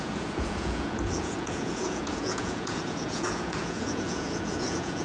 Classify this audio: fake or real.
fake